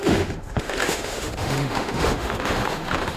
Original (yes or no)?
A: no